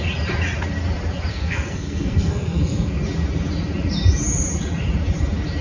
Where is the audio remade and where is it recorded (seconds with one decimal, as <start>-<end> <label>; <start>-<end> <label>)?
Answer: 0.0-1.3 recorded; 1.3-2.9 remade; 2.9-5.6 recorded